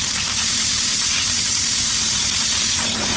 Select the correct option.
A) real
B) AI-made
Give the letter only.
B